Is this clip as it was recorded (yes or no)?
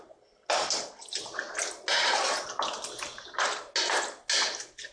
yes